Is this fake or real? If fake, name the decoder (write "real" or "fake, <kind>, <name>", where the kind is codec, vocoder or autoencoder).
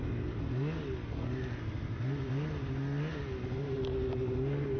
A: real